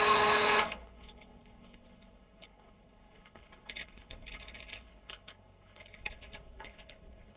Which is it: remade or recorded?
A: remade